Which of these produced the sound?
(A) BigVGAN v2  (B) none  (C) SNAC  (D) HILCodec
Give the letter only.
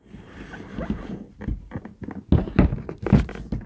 B